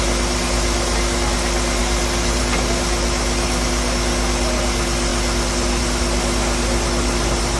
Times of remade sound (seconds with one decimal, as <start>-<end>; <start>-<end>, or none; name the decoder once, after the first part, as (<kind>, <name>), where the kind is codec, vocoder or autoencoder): none